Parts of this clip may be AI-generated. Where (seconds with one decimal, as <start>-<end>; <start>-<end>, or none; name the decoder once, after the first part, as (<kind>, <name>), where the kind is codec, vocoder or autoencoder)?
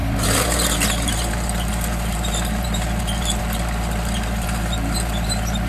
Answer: 0.0-5.7 (vocoder, BigVGAN v2)